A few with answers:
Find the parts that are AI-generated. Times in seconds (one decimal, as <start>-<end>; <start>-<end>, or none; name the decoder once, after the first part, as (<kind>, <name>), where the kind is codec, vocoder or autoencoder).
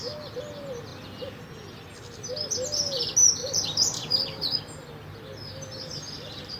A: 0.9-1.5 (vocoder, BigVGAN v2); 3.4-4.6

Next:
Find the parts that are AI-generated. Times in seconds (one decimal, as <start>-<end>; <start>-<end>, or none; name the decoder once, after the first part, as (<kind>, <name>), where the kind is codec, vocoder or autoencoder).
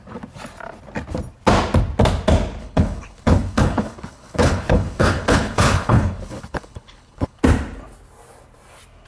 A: 2.6-7.4 (codec, HILCodec)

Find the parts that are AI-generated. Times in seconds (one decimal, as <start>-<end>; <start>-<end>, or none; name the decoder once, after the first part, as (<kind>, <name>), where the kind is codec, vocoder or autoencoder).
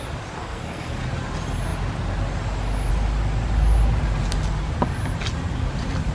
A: 0.4-1.0 (codec, SNAC)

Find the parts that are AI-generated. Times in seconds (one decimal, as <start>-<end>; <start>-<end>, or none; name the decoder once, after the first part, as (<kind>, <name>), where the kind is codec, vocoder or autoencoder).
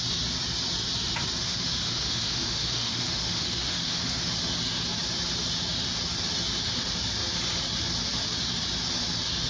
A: 1.4-4.3 (autoencoder, DAC-VAE)